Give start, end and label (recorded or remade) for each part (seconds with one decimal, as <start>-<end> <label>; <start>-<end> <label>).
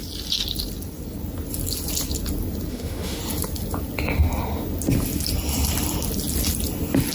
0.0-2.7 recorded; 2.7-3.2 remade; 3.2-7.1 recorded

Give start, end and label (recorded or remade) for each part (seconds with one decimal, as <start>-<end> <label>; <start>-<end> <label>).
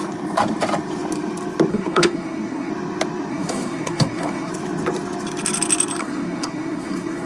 0.0-1.7 recorded; 1.7-2.7 remade; 2.7-3.3 recorded; 3.3-4.5 remade; 4.5-6.0 recorded; 6.0-7.3 remade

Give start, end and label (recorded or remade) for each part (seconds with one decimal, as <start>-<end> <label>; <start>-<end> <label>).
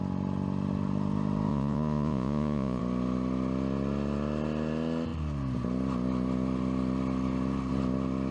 0.0-1.5 recorded; 1.5-2.8 remade; 2.8-8.3 recorded